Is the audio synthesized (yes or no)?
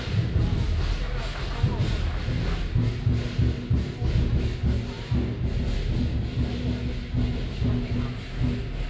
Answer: no